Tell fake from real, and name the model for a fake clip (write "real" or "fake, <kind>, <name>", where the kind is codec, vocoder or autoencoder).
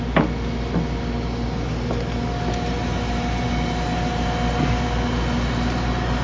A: real